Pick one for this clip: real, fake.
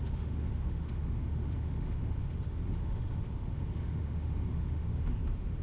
fake